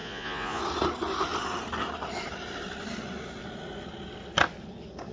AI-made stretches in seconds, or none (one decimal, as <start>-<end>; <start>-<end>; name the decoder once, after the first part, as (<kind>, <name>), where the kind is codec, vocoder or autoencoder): 0.0-0.6 (vocoder, Vocos)